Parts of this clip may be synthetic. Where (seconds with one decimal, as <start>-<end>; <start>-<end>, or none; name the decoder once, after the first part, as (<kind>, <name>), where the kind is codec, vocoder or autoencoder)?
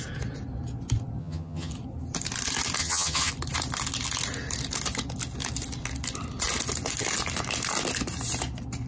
1.2-1.7 (vocoder, HiFi-GAN); 2.8-3.3